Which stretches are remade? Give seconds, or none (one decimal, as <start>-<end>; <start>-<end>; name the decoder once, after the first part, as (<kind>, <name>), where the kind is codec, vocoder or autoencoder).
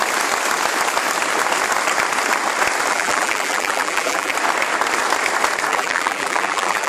2.9-4.3 (vocoder, BigVGAN v2); 5.7-6.9